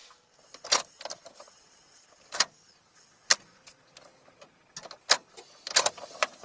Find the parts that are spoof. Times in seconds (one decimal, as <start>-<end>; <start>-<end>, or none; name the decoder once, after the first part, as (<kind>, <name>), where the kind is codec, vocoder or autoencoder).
1.6-4.1 (vocoder, BigVGAN v2); 5.9-6.4